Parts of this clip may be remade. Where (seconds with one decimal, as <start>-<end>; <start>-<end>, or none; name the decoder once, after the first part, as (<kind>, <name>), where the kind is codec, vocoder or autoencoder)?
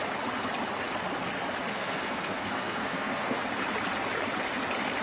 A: 1.7-3.4 (codec, SNAC)